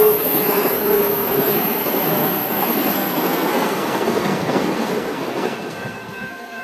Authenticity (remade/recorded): remade